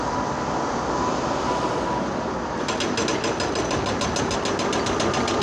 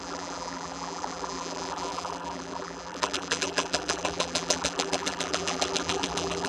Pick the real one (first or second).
first